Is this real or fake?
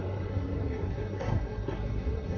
fake